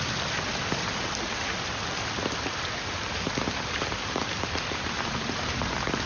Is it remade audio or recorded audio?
recorded